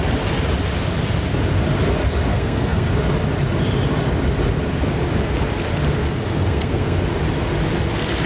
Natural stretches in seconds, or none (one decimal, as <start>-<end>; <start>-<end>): 0.0-2.3; 2.9-6.0; 7.0-8.3